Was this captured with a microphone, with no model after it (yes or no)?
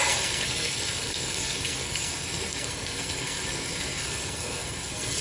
no